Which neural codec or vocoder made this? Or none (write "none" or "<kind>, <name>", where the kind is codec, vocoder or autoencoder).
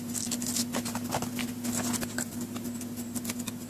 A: none